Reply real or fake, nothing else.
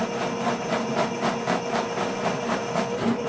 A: real